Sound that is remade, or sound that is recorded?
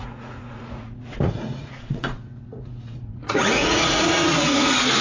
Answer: remade